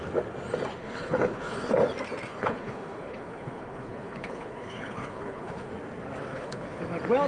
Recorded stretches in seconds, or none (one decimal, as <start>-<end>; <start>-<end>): 0.0-0.7; 1.7-2.3; 5.7-6.3; 6.8-7.3

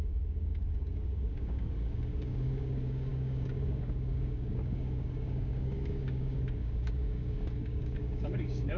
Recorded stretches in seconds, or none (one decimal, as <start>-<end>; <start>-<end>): none

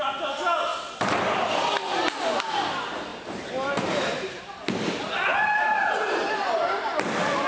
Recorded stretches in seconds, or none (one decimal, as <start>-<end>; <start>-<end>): 0.0-3.1; 4.4-5.3; 6.3-7.5

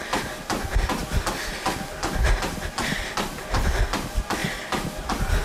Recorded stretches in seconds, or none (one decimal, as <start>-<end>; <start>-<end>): 0.0-5.4

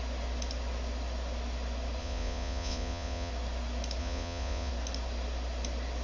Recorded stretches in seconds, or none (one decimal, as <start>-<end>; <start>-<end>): 0.0-2.0; 3.3-4.0; 4.7-6.0

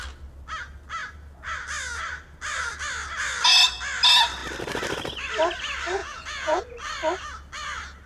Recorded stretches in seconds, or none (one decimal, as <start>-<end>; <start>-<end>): 0.0-6.0; 6.6-8.1

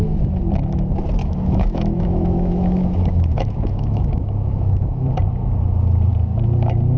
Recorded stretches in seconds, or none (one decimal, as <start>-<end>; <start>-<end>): 0.0-1.2; 5.1-7.0